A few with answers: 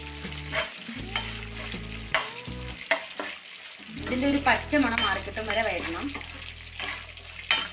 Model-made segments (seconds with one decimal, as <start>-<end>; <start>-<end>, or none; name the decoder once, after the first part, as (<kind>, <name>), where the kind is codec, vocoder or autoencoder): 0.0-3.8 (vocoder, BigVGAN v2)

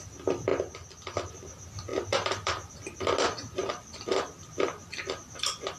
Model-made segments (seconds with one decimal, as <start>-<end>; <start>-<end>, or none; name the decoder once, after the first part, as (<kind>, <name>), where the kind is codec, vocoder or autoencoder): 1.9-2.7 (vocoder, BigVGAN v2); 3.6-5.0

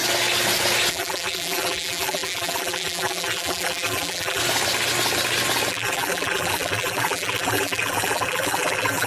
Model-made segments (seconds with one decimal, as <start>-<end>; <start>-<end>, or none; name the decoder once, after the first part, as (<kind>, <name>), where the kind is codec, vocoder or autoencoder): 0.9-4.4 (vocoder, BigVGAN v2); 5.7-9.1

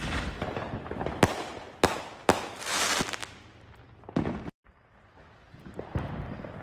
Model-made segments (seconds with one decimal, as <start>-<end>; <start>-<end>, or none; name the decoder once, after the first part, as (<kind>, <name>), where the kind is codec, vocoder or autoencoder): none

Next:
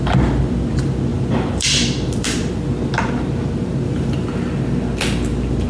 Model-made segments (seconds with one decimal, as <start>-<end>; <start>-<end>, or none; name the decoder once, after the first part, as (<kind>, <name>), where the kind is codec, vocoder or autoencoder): 1.1-2.5 (vocoder, BigVGAN v2)

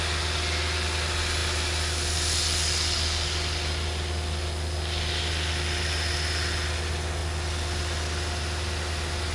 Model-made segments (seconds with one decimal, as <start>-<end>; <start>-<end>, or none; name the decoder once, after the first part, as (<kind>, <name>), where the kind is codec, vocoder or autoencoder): none

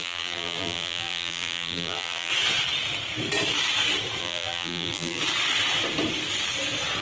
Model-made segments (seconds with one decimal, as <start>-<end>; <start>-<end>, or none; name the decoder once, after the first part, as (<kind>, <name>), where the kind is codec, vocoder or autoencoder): 0.0-2.3 (vocoder, BigVGAN v2); 4.2-5.2